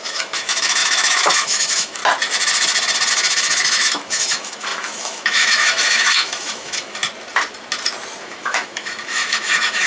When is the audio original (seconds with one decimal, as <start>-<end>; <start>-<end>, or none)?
2.0-3.1; 7.0-8.2